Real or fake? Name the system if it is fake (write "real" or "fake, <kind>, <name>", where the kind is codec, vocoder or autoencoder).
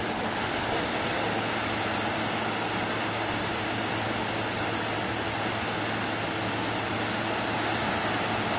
real